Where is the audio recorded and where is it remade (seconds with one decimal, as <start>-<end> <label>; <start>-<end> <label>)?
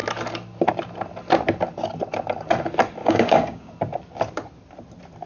0.0-3.0 recorded; 3.0-3.7 remade; 3.7-5.3 recorded